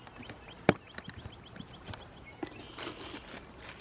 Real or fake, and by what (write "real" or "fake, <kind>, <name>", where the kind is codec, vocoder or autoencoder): real